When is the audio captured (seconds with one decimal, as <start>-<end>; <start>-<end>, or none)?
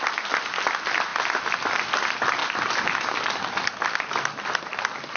0.0-1.1; 2.0-2.4; 3.7-5.2